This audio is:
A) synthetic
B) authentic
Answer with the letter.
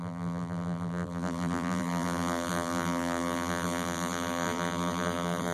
A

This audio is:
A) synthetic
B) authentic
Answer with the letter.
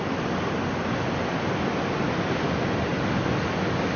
B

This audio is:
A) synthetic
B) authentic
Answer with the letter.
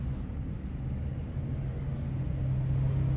B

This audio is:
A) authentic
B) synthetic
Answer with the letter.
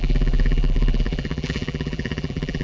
B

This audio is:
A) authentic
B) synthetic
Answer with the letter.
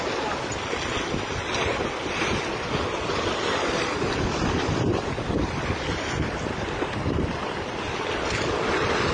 A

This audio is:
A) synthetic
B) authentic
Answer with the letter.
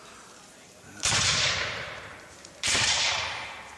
A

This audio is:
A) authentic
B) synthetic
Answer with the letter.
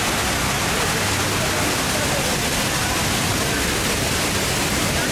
A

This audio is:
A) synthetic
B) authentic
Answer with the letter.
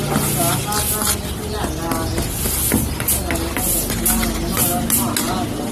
B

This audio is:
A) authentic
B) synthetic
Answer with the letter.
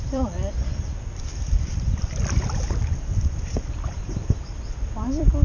B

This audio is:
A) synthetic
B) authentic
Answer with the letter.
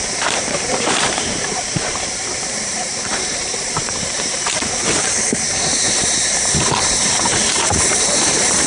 A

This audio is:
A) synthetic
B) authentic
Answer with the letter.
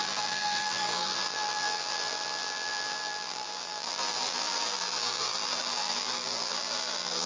A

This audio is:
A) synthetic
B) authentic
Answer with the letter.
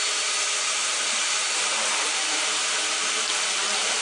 A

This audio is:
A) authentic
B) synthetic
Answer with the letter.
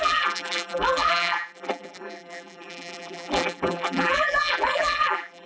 B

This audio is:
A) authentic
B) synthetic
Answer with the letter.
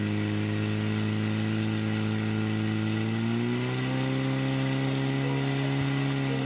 A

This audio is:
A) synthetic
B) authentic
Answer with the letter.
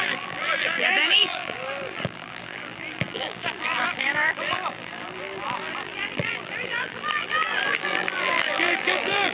A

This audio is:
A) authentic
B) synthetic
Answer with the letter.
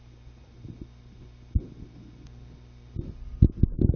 A